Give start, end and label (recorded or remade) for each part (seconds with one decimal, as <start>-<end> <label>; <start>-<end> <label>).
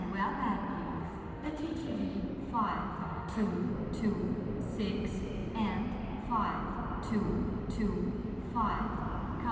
0.0-1.0 recorded; 1.0-2.3 remade; 2.3-3.0 recorded; 3.0-3.7 remade; 3.7-9.5 recorded